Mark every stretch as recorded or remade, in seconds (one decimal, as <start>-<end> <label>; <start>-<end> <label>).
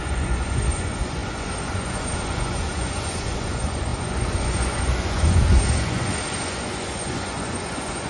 0.0-8.1 remade